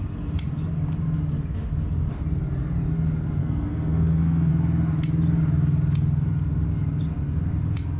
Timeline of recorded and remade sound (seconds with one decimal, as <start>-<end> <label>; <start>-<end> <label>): 0.0-3.4 recorded; 3.4-4.5 remade; 4.5-8.0 recorded